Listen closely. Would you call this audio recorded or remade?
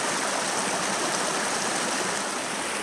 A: recorded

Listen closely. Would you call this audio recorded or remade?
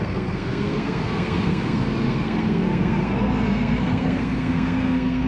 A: remade